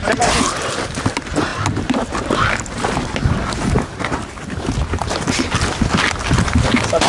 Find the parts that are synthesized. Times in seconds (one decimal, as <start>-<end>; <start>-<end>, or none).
none